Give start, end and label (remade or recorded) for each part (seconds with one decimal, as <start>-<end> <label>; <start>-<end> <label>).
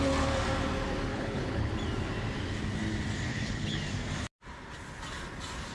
0.0-1.1 recorded; 1.1-1.7 remade; 1.7-3.3 recorded; 3.3-3.8 remade; 3.8-5.7 recorded